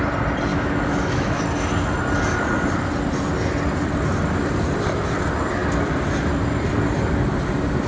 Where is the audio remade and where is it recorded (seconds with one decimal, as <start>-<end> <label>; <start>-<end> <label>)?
0.0-0.5 recorded; 0.5-1.4 remade; 1.4-7.9 recorded